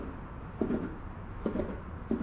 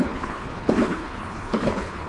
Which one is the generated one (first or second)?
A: second